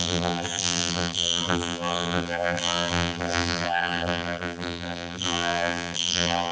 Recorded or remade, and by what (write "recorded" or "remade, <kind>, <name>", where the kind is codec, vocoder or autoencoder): remade, vocoder, BigVGAN v2